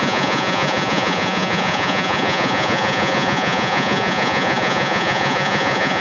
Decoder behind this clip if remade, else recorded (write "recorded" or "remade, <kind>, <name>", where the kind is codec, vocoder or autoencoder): remade, vocoder, Vocos